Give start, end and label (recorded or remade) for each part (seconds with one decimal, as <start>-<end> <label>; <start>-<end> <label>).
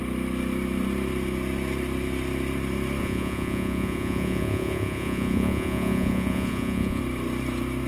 0.0-3.0 recorded; 3.0-7.0 remade; 7.0-7.9 recorded